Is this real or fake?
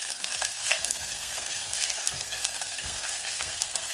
fake